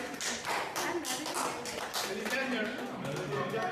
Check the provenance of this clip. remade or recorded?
recorded